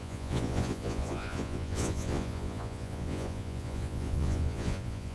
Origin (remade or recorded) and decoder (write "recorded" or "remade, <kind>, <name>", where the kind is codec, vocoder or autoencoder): remade, vocoder, Vocos